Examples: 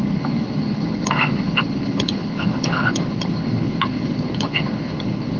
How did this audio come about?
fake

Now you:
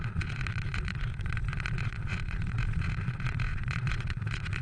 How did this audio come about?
fake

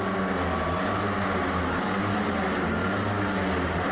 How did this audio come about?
real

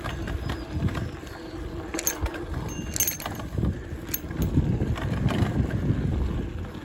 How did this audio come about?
real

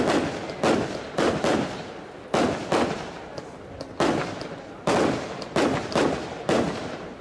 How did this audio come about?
real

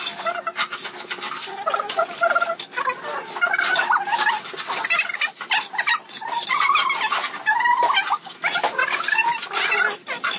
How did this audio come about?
real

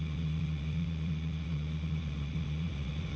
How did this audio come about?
fake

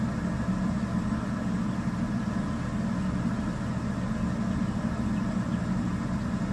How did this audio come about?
real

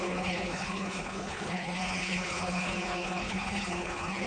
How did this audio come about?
fake